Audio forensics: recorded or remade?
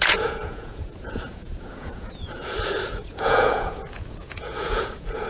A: remade